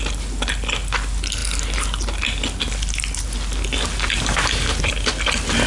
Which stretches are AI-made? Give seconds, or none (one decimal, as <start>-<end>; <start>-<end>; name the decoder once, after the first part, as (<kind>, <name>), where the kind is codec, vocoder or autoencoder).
none